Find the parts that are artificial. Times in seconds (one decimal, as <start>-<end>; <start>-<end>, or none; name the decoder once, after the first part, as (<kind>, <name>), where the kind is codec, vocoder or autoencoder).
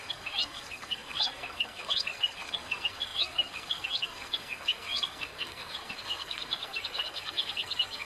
0.0-8.1 (codec, SNAC)